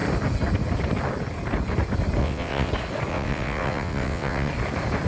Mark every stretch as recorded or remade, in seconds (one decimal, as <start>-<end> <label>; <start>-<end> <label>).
0.0-2.2 recorded; 2.2-2.7 remade; 2.7-3.1 recorded; 3.1-4.5 remade; 4.5-5.1 recorded